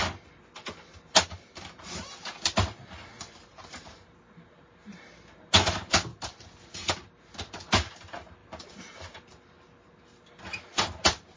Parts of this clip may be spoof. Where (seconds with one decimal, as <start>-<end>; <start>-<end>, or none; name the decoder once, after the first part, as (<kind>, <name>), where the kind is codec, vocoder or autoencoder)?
3.5-4.5 (vocoder, BigVGAN v2); 6.1-6.6; 10.7-11.4